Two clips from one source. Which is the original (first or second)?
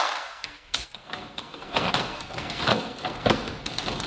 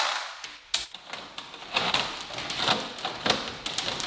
second